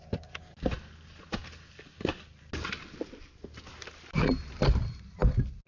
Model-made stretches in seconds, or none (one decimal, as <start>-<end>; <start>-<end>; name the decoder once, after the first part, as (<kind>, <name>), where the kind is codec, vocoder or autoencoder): none

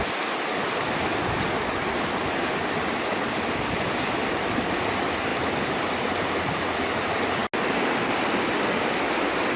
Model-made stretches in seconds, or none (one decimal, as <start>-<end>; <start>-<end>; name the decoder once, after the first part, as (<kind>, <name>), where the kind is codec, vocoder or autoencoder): none

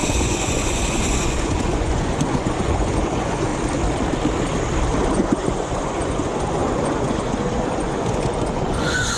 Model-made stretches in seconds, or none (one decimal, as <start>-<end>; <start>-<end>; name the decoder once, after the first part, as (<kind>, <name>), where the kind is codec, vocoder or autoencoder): 0.0-3.5 (vocoder, Vocos); 5.1-9.2